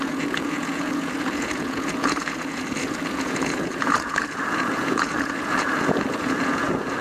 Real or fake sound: fake